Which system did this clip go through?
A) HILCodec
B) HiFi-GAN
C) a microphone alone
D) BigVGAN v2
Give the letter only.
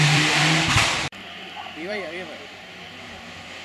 D